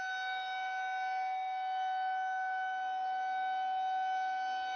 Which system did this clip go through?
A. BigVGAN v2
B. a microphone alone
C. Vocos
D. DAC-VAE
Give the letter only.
B